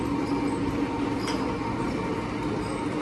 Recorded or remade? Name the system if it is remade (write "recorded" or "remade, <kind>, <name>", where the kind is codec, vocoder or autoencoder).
recorded